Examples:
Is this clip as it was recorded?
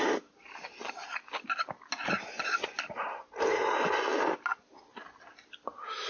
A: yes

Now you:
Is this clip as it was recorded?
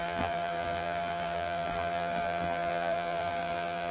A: no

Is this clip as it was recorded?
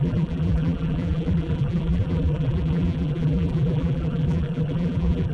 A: no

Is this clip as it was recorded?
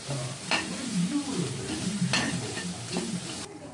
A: no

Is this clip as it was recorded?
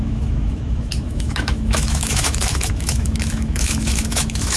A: no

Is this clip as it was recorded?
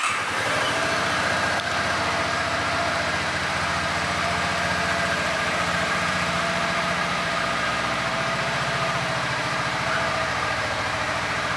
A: no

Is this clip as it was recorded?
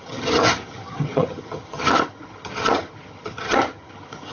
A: no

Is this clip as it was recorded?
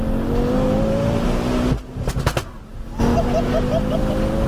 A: yes